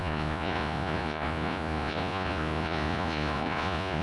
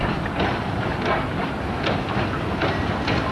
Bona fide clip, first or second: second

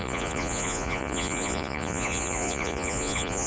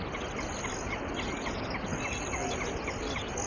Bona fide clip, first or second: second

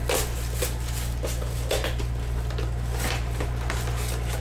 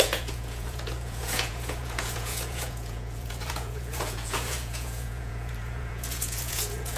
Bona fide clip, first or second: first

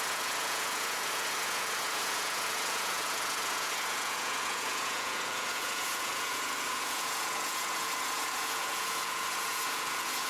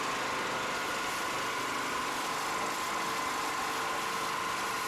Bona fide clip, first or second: second